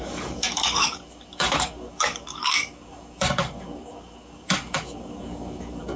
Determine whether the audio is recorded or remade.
remade